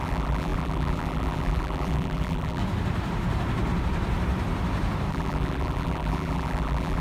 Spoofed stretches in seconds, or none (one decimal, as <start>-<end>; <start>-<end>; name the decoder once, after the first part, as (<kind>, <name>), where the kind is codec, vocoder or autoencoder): 0.0-2.6 (vocoder, BigVGAN v2); 5.1-7.0